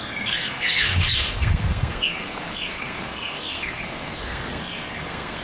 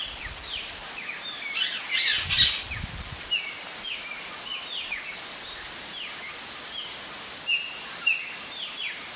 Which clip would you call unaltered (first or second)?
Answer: second